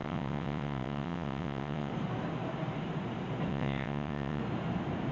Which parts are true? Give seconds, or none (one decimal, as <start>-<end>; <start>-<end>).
1.9-3.5; 4.4-5.1